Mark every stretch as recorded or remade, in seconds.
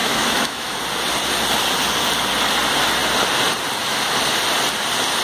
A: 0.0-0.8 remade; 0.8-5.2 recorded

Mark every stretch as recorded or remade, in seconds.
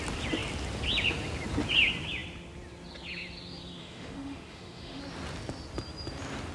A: 0.0-3.8 recorded; 3.8-5.0 remade; 5.0-6.5 recorded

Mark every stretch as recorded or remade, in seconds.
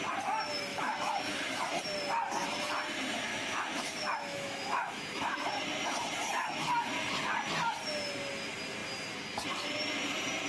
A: 0.0-0.7 recorded; 0.7-1.6 remade; 1.6-3.3 recorded; 3.3-5.5 remade; 5.5-10.5 recorded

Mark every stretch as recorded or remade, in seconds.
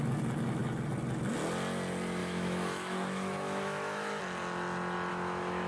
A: 0.0-2.2 recorded; 2.2-4.2 remade; 4.2-5.1 recorded; 5.1-5.7 remade